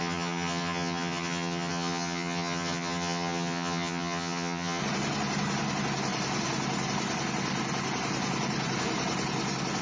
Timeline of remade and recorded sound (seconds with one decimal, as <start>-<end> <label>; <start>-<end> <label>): 0.0-4.8 remade; 4.8-9.8 recorded